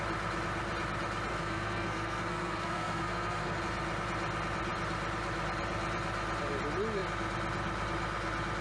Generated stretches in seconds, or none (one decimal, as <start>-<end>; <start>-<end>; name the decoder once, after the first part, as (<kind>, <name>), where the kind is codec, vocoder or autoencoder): 1.3-3.6 (codec, SNAC)